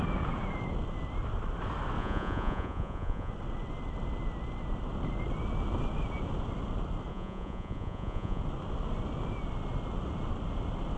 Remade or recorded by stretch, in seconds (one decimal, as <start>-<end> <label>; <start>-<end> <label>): 0.0-2.0 recorded; 2.0-3.3 remade; 3.3-7.1 recorded; 7.1-8.4 remade; 8.4-11.0 recorded